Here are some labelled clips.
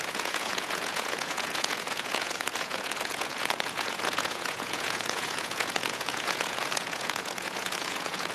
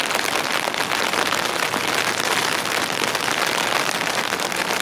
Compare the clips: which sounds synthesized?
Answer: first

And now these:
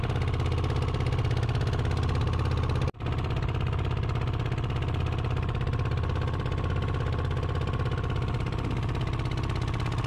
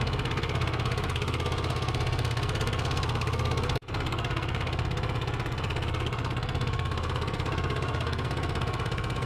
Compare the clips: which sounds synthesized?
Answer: second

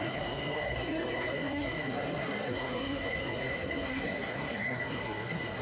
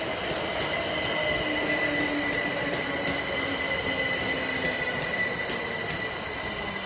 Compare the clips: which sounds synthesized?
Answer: first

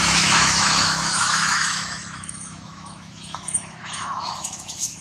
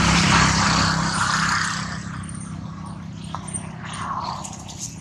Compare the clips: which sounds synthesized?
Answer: first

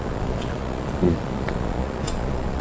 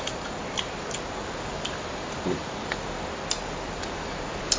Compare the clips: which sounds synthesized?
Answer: first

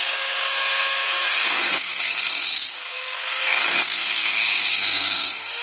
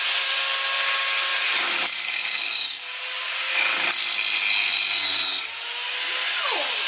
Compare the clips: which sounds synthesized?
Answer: first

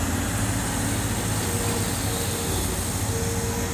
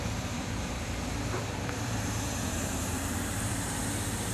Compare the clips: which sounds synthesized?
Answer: second